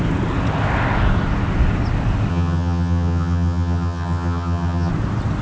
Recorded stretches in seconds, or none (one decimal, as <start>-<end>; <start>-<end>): 0.0-2.3; 4.9-5.4